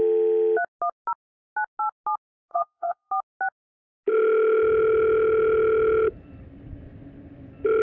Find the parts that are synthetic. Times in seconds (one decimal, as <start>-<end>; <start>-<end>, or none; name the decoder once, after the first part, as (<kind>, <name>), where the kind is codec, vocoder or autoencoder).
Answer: 2.5-3.1 (vocoder, WaveNeXt)